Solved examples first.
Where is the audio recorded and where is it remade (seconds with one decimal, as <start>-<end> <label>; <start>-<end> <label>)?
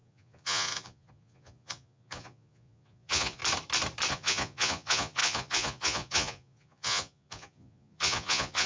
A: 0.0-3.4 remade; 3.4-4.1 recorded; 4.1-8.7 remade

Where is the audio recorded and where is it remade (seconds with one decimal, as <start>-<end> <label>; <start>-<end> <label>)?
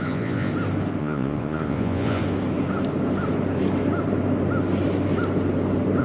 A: 0.0-0.5 remade; 0.5-1.0 recorded; 1.0-2.2 remade; 2.2-6.0 recorded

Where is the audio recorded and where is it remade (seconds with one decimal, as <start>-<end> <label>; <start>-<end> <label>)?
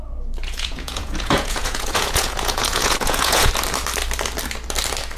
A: 0.0-0.4 recorded; 0.4-3.5 remade; 3.5-5.2 recorded